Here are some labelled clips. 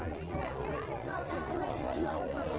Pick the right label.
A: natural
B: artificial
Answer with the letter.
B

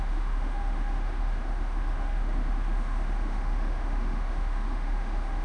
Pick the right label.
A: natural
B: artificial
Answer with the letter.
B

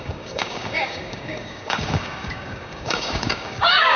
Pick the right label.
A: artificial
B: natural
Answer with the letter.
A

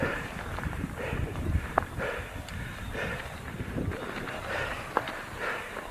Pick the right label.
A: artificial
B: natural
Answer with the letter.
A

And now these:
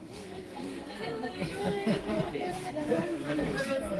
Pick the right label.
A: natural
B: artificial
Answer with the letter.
B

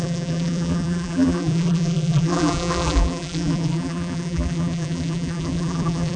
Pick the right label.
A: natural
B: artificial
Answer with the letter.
B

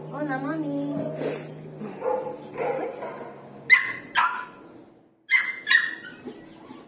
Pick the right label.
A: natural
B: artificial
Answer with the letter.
A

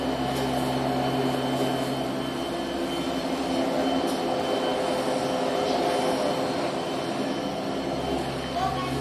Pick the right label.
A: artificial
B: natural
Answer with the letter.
B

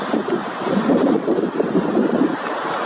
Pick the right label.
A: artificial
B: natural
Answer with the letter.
B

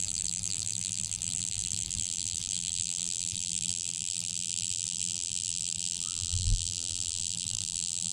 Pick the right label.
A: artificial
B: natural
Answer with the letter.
A